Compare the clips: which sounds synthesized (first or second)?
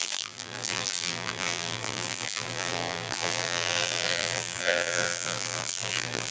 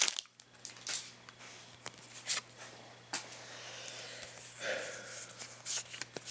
first